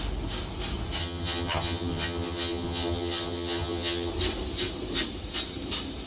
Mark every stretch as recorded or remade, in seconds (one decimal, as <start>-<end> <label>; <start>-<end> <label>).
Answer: 0.0-1.0 recorded; 1.0-4.1 remade; 4.1-6.1 recorded